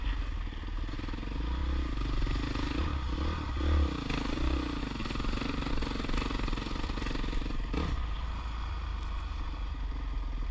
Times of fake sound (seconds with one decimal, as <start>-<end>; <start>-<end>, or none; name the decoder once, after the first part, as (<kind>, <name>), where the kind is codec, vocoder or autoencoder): none